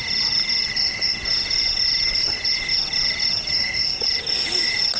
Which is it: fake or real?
real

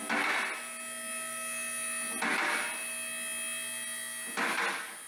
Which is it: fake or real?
real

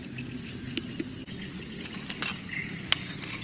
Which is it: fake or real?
real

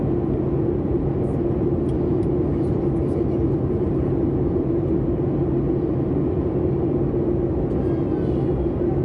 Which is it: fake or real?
real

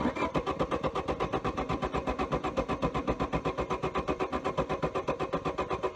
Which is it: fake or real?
real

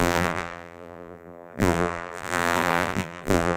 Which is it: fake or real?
fake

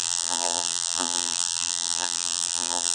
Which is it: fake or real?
fake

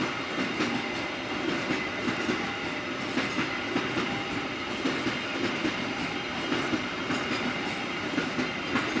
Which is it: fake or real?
real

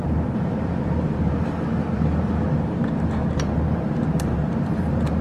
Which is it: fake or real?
fake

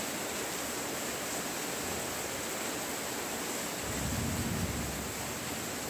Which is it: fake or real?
real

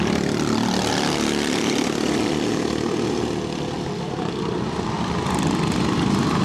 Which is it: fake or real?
real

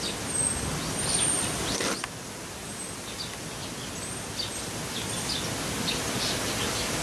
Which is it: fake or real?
real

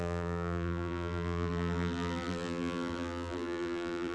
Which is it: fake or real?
fake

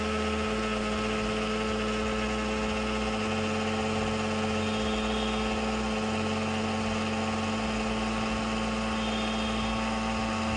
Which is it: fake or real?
real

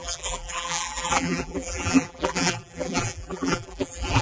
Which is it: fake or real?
fake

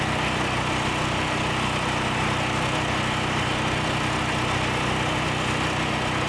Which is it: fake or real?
real